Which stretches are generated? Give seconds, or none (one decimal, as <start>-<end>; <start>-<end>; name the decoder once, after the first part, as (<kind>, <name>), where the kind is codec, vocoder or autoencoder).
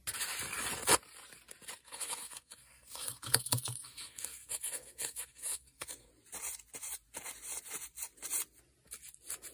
1.8-6.1 (codec, SNAC)